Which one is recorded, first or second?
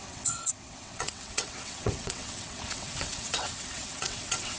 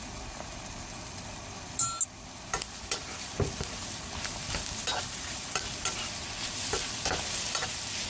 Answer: second